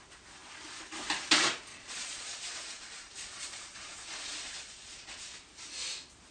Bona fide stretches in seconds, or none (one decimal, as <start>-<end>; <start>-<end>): 0.0-1.7; 5.4-6.3